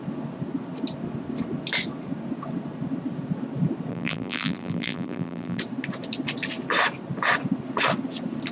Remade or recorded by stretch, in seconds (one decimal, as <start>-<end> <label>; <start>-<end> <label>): 0.0-3.9 recorded; 3.9-5.6 remade; 5.6-8.5 recorded